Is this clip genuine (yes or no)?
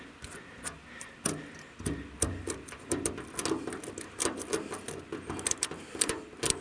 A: yes